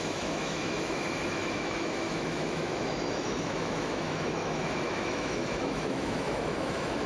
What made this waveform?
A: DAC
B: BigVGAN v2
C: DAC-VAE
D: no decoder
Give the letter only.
C